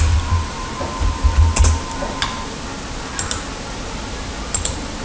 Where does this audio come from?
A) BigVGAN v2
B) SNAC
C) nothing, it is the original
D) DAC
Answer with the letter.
C